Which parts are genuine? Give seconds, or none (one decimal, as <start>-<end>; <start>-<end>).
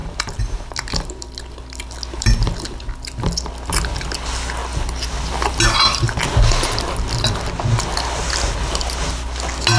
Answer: 0.7-9.8